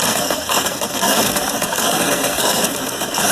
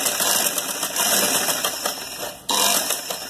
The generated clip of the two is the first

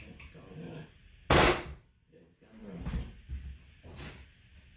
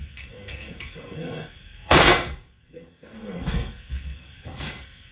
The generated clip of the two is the second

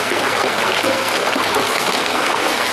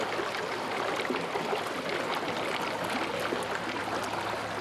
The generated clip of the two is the first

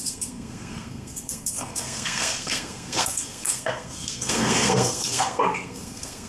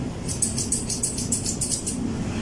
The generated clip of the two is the first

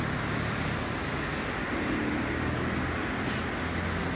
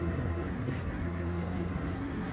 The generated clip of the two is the second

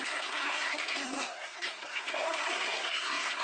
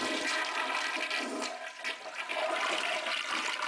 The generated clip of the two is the first